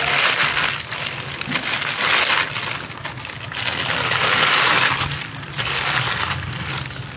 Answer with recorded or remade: recorded